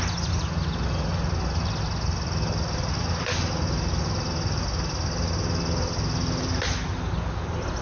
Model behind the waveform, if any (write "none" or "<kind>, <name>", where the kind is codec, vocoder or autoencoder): none